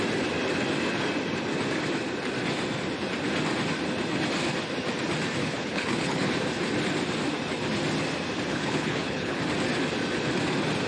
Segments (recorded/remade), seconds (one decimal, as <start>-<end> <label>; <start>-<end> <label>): 0.0-5.4 recorded; 5.4-6.3 remade; 6.3-8.5 recorded; 8.5-9.4 remade; 9.4-10.9 recorded